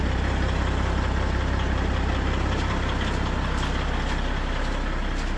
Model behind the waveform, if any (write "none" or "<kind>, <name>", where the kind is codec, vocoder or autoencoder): none